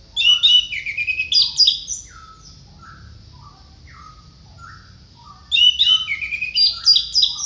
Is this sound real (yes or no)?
yes